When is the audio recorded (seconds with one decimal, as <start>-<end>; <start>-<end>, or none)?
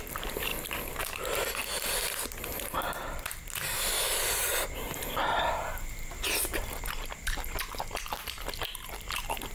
0.5-2.8; 4.5-5.0